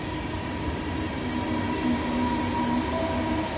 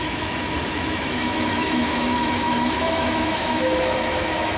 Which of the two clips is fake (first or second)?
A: second